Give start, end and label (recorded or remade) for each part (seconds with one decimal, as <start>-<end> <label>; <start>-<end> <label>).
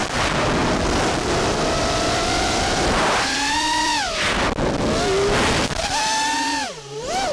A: 0.0-1.8 recorded; 1.8-3.9 remade; 3.9-5.8 recorded; 5.8-7.3 remade